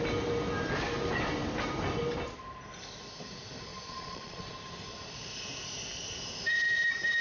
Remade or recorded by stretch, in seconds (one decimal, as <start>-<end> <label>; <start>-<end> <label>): 0.0-3.7 recorded; 3.7-4.5 remade; 4.5-7.2 recorded